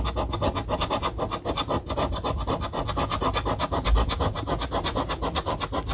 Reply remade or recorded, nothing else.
recorded